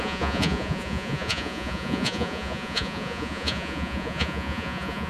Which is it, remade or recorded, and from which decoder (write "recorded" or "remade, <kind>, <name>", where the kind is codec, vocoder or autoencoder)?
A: remade, vocoder, Vocos